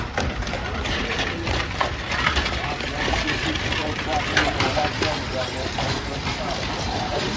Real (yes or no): no